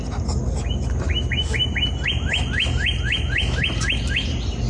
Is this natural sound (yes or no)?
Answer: yes